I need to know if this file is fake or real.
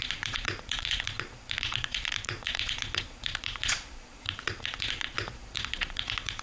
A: fake